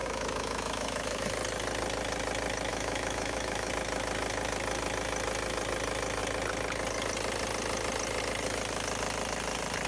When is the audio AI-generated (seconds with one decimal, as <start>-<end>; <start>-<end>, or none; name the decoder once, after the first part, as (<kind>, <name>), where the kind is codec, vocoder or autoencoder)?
0.0-1.3 (autoencoder, DAC-VAE); 2.7-3.7